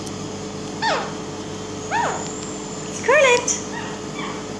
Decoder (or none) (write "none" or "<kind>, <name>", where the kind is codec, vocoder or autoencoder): none